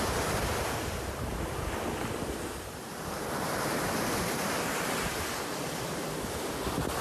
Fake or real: fake